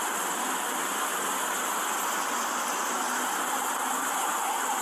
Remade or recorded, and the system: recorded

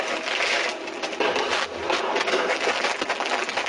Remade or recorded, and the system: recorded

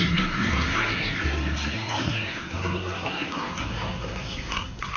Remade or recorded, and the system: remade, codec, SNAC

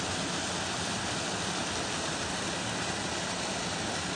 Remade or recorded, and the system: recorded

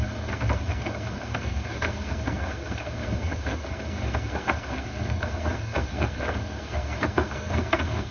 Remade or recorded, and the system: remade, codec, SNAC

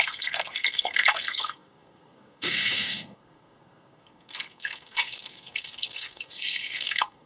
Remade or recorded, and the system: remade, codec, SNAC